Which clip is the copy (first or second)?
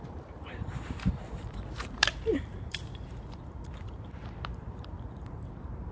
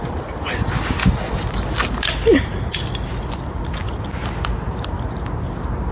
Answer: first